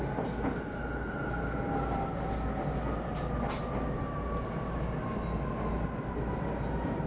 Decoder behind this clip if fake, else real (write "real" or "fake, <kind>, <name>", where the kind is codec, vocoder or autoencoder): real